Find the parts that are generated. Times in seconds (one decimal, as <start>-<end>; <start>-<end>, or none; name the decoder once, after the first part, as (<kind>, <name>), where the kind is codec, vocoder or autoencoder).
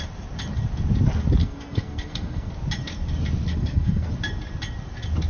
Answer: 1.4-2.5 (codec, SNAC); 3.5-4.1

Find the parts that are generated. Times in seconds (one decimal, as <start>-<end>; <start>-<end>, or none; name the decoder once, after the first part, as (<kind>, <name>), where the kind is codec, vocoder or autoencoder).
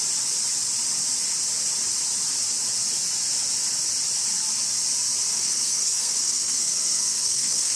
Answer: 5.3-7.8 (codec, SNAC)